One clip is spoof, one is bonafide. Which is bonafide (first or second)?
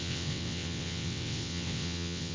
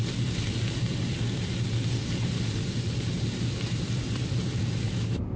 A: second